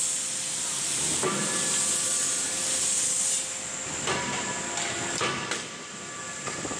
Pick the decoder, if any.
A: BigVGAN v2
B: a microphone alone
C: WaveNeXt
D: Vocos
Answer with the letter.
B